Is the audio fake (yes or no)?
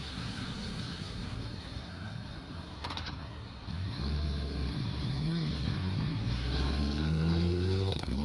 yes